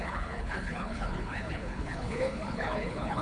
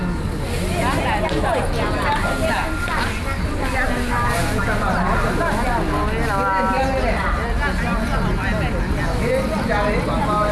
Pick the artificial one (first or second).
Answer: first